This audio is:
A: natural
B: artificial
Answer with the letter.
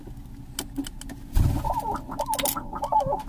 A